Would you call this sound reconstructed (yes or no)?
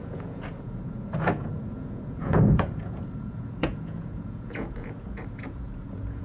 yes